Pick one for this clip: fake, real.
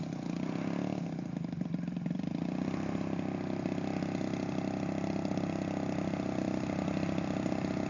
real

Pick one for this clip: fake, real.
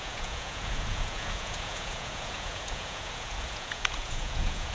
fake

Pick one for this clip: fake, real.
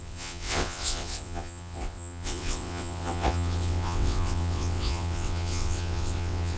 fake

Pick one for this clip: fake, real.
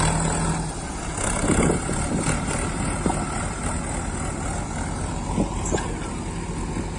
real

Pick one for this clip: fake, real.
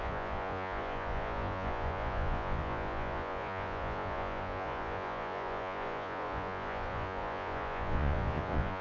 fake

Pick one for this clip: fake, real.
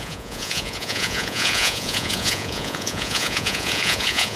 fake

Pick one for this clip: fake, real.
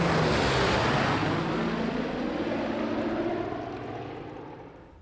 real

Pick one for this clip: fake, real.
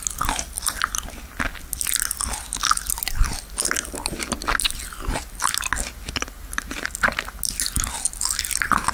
real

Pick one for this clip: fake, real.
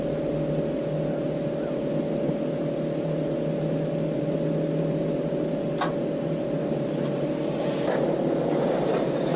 real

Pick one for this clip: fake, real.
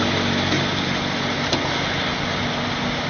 real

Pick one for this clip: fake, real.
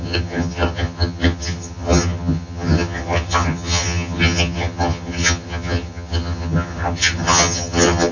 fake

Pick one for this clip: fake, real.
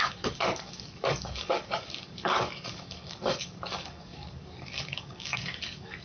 fake